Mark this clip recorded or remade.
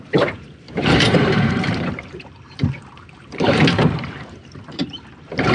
remade